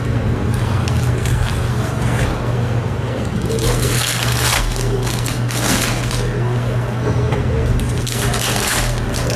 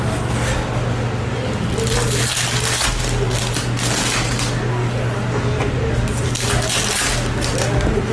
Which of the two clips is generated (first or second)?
first